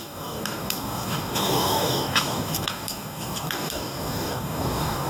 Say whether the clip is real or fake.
fake